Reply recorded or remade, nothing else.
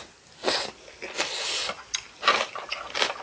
recorded